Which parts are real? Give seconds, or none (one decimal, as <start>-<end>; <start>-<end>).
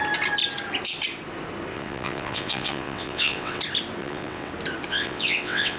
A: 0.0-1.7; 3.6-4.0; 4.5-4.9